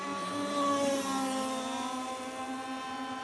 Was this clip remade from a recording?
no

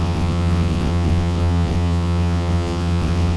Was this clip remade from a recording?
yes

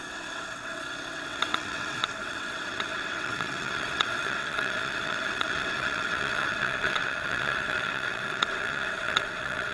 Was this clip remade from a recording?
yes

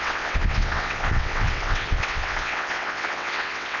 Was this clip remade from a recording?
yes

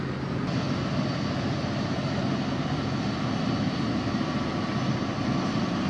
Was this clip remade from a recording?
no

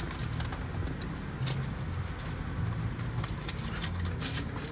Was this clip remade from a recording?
no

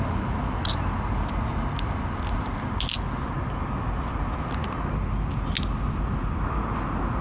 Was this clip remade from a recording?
no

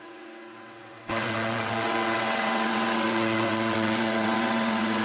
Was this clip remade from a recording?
yes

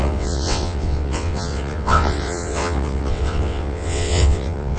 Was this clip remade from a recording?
yes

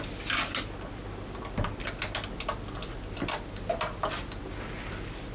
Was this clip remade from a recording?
no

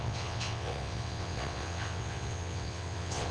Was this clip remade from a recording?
yes